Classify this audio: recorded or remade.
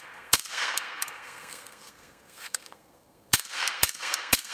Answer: remade